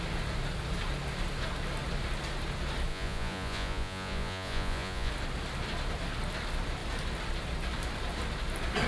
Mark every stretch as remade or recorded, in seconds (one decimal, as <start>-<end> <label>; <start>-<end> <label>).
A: 0.0-2.9 recorded; 2.9-5.1 remade; 5.1-8.9 recorded